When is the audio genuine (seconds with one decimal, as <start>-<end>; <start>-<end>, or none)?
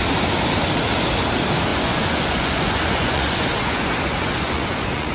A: 0.0-1.7